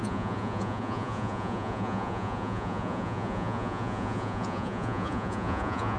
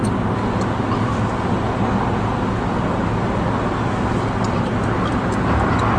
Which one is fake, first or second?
first